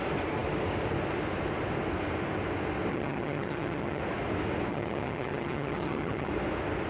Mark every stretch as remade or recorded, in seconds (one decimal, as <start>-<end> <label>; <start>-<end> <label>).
0.0-2.9 recorded; 2.9-4.0 remade; 4.0-4.7 recorded; 4.7-6.3 remade; 6.3-6.9 recorded